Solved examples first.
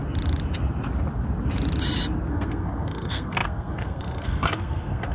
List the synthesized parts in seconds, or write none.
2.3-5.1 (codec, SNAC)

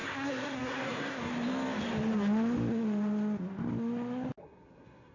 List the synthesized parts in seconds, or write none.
0.0-1.3 (codec, SNAC); 4.4-5.1

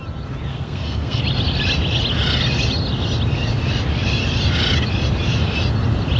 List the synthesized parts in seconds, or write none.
0.5-1.2 (codec, SNAC)

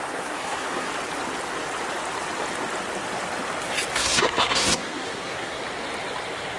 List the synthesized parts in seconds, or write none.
0.0-0.9 (codec, SNAC); 3.9-5.6

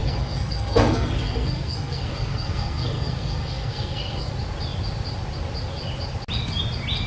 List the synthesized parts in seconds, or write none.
0.0-4.3 (codec, SNAC)

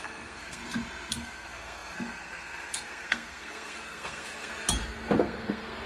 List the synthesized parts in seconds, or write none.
0.0-0.6 (codec, SNAC); 1.1-4.5; 5.2-5.9

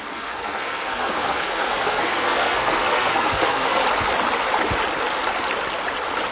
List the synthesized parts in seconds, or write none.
0.0-3.8 (codec, SNAC)

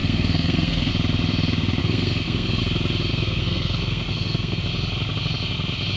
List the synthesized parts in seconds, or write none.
0.0-0.9 (codec, SNAC); 1.8-2.6; 3.1-4.6